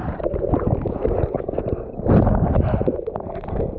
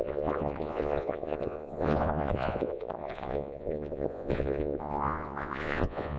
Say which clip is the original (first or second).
first